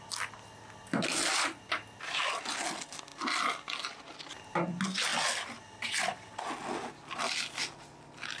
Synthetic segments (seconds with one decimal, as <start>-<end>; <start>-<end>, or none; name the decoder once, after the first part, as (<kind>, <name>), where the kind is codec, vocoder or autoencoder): none

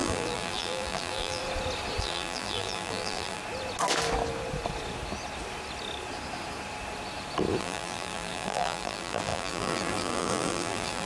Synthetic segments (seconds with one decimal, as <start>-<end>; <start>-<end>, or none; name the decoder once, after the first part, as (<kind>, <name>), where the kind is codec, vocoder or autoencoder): 0.0-1.4 (vocoder, BigVGAN v2); 2.0-3.4; 7.6-11.1

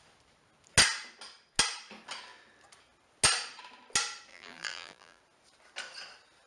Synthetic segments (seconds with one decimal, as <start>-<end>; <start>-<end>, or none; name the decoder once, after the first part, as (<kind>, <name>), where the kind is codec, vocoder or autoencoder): 4.3-5.2 (vocoder, BigVGAN v2)

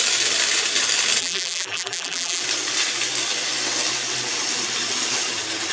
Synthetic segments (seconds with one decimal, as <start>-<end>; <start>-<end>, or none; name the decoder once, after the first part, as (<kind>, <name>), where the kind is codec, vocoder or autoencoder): 1.2-2.4 (vocoder, BigVGAN v2)

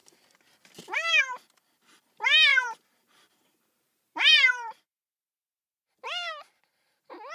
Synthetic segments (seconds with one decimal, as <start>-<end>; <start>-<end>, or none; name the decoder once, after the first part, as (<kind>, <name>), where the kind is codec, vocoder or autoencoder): 2.5-5.5 (vocoder, BigVGAN v2)

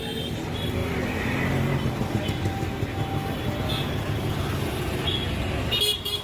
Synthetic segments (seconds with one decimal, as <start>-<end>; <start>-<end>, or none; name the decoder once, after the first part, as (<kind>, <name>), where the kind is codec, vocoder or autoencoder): none

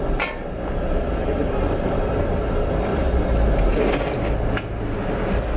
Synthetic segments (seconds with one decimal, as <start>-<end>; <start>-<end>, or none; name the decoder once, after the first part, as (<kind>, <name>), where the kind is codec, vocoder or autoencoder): 1.2-2.3 (vocoder, BigVGAN v2); 2.9-3.9